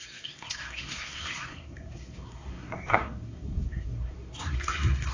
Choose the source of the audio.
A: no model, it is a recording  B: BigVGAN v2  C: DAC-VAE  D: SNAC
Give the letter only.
D